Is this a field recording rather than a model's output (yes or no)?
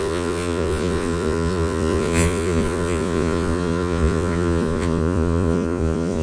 no